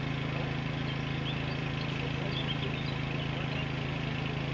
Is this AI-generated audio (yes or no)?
no